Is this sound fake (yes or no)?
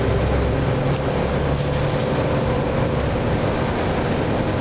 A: no